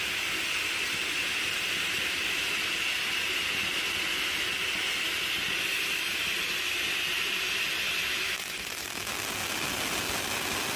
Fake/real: real